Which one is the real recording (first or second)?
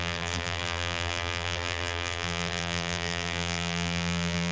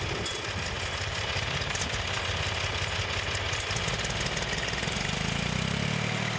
second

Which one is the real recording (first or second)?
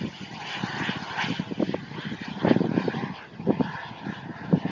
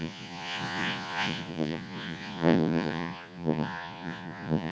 first